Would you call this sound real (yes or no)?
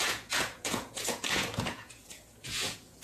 no